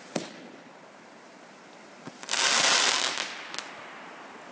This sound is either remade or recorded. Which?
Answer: recorded